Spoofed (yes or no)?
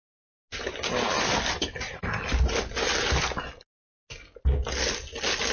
no